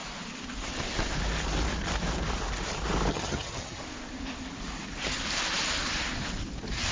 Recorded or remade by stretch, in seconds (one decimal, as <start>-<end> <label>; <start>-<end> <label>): 0.0-3.1 recorded; 3.1-3.8 remade; 3.8-6.9 recorded